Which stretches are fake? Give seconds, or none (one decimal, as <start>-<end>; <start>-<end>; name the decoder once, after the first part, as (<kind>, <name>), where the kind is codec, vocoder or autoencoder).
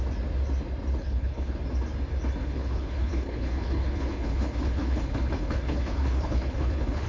1.0-1.6 (codec, HILCodec); 2.4-7.1